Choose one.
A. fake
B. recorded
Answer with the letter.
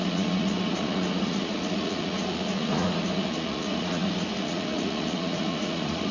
A